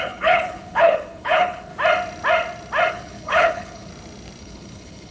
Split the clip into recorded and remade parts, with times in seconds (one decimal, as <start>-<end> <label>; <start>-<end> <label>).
0.0-1.7 remade; 1.7-2.9 recorded; 2.9-3.9 remade; 3.9-4.4 recorded; 4.4-5.1 remade